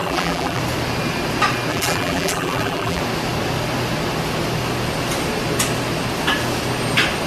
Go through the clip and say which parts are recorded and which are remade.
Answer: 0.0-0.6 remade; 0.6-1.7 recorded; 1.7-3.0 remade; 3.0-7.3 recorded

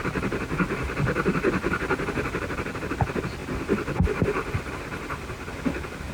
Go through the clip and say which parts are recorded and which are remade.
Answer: 0.0-1.3 remade; 1.3-3.4 recorded; 3.4-4.7 remade; 4.7-6.1 recorded

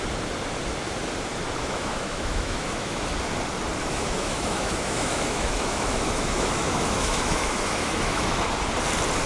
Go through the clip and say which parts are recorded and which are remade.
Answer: 0.0-1.6 recorded; 1.6-3.1 remade; 3.1-3.8 recorded; 3.8-8.4 remade; 8.4-9.3 recorded

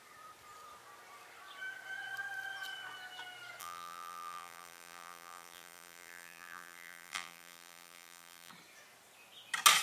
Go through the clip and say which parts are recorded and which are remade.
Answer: 0.0-3.6 recorded; 3.6-8.5 remade; 8.5-9.8 recorded

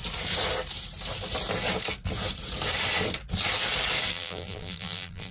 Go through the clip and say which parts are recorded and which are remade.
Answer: 0.0-4.1 recorded; 4.1-5.3 remade

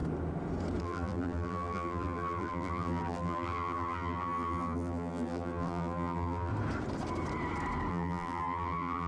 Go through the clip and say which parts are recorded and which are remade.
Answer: 0.0-0.8 recorded; 0.8-6.5 remade; 6.5-7.9 recorded; 7.9-9.1 remade